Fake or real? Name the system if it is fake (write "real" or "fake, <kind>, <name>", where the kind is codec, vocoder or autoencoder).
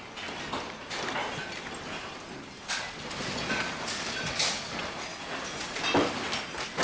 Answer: real